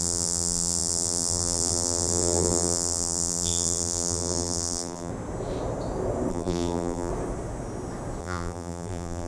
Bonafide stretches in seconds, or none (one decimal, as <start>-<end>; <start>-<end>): 5.1-6.3; 7.1-8.2